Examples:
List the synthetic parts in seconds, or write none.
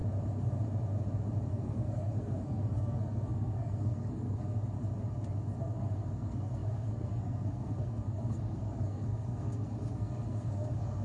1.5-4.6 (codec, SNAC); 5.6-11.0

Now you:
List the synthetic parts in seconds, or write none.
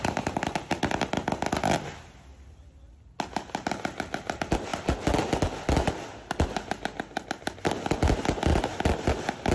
none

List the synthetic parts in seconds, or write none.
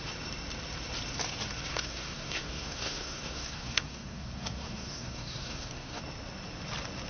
1.7-6.0 (codec, SNAC)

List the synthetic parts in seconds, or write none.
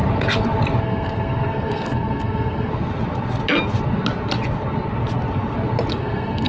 0.8-2.7 (codec, SNAC); 6.0-6.5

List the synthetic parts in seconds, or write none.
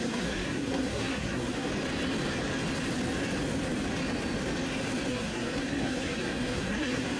0.0-1.7 (codec, SNAC); 5.1-7.2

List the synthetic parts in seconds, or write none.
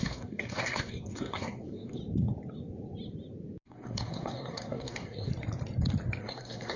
0.0-2.0 (codec, SNAC); 3.6-5.3; 6.2-6.8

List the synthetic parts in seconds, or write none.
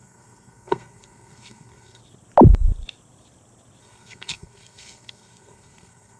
0.0-2.0 (codec, SNAC); 3.8-6.2